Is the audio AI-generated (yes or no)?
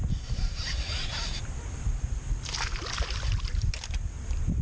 no